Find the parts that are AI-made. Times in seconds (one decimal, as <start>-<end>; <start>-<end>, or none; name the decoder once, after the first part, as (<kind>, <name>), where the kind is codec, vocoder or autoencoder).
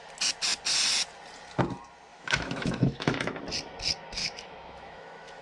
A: 2.1-3.4 (autoencoder, DAC-VAE); 4.2-5.4